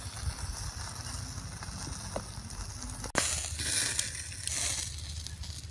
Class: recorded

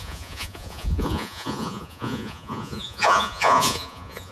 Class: remade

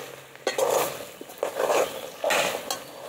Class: recorded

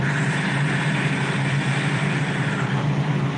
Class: recorded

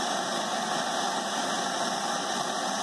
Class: recorded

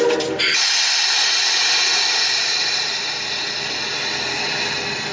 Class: recorded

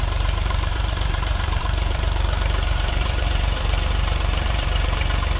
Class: remade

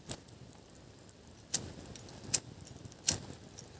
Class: recorded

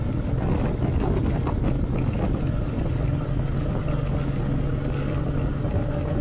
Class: recorded